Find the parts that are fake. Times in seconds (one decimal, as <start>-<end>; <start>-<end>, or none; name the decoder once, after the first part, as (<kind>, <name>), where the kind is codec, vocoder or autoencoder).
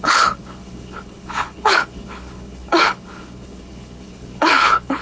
0.0-5.0 (codec, HILCodec)